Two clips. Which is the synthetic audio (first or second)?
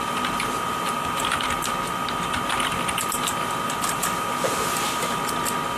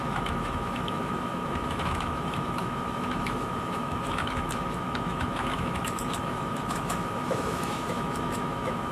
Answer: second